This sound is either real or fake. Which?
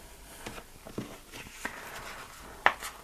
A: fake